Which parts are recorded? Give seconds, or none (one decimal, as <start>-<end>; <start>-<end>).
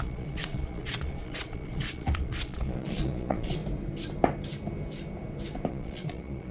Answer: 3.6-5.7